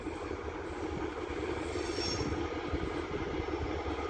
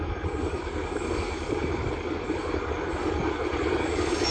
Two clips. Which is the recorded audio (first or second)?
first